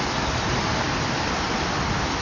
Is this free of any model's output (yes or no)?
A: yes